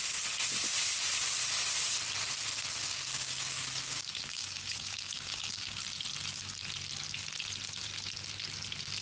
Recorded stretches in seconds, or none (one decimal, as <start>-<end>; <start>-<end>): 0.0-2.8; 5.8-9.0